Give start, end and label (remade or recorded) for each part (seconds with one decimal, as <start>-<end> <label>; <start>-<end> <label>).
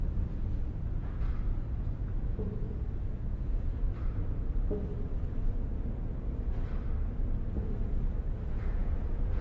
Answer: 0.0-3.9 remade; 3.9-8.6 recorded; 8.6-9.4 remade